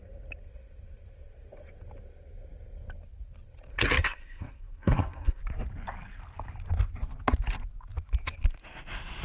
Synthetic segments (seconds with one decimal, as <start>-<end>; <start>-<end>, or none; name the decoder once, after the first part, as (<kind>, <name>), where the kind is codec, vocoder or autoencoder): 3.7-5.4 (codec, SNAC)